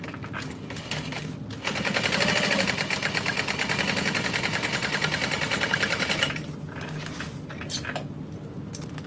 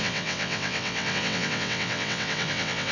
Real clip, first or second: first